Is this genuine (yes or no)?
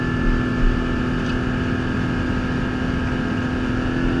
yes